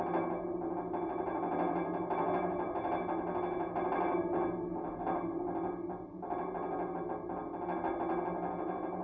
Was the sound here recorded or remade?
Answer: recorded